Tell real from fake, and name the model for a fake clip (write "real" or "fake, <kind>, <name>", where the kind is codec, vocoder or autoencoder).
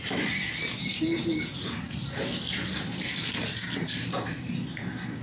real